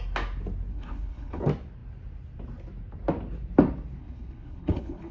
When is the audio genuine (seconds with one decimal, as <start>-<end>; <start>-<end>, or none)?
0.0-0.7; 1.4-4.0